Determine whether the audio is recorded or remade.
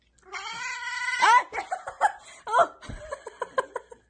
recorded